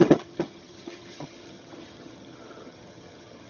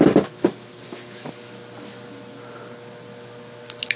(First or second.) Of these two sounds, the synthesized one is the first